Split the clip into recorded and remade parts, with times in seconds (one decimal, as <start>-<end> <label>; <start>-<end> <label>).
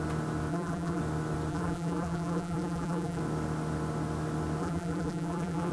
0.0-0.5 recorded; 0.5-1.0 remade; 1.0-1.5 recorded; 1.5-3.2 remade; 3.2-4.6 recorded; 4.6-5.7 remade